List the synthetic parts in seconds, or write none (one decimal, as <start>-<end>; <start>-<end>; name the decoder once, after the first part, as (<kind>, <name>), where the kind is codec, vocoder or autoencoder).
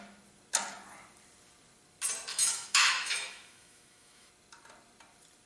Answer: 2.3-4.3 (autoencoder, DAC-VAE)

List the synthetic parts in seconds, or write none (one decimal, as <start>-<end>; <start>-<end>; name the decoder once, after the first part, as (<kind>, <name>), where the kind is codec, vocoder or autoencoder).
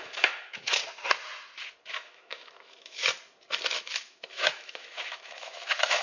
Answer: 0.0-0.8 (autoencoder, DAC-VAE); 1.9-3.0; 3.7-6.0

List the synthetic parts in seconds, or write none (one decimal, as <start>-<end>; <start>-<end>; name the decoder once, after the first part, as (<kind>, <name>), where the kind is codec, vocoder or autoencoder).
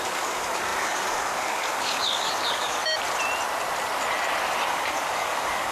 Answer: 0.0-2.8 (codec, DAC); 4.7-5.7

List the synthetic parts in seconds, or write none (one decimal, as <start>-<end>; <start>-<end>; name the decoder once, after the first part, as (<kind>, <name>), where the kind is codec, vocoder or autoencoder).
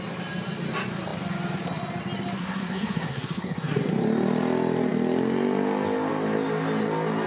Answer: 2.4-3.9 (codec, SNAC)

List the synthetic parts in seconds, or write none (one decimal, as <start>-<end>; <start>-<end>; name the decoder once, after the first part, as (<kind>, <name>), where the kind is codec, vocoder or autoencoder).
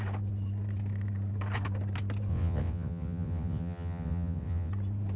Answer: 2.3-4.7 (vocoder, WaveNeXt)